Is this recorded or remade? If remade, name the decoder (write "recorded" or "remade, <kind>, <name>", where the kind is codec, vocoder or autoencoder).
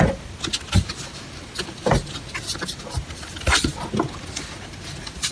recorded